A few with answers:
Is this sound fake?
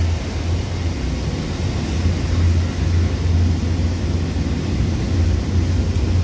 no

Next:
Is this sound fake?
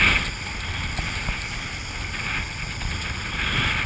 no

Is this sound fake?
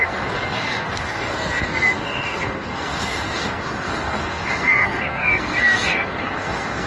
yes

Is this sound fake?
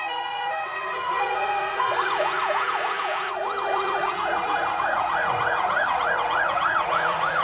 yes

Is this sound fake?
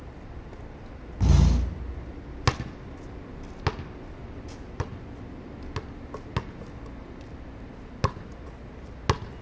no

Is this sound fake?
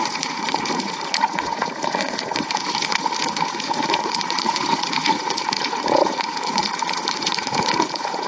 yes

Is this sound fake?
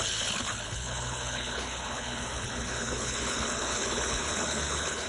yes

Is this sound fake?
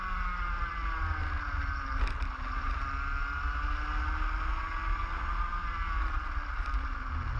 no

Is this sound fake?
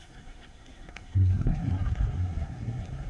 yes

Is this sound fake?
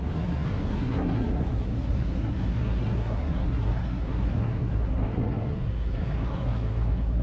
yes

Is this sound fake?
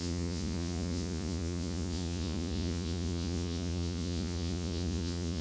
yes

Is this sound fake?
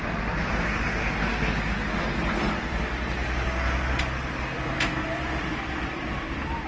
no